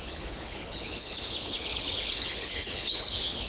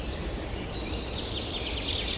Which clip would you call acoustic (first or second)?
second